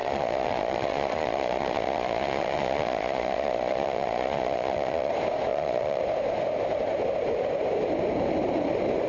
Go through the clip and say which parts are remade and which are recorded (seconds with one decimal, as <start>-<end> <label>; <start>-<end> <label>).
0.0-5.1 remade; 5.1-5.5 recorded; 5.5-6.0 remade; 6.0-9.1 recorded